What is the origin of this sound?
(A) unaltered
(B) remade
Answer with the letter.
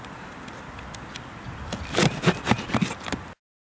A